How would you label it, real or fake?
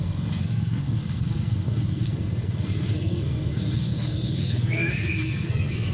fake